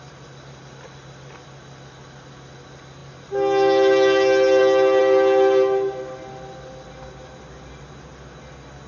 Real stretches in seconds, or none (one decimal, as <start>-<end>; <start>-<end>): 0.0-8.9